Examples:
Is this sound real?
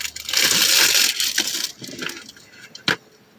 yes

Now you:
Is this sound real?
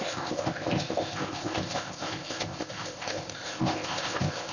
no